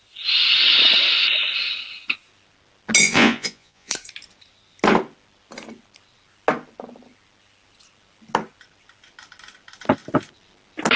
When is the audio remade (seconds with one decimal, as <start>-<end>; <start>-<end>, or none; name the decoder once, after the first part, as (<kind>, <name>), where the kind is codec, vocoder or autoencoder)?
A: 3.0-3.9 (vocoder, Vocos)